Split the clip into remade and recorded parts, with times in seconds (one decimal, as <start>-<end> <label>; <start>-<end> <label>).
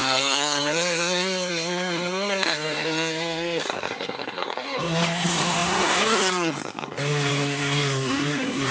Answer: 0.0-8.7 remade